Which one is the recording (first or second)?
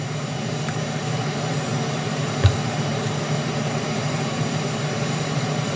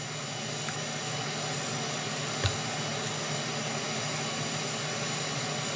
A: second